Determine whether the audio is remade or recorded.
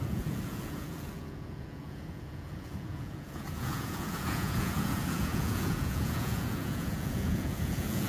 remade